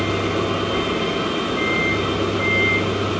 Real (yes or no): yes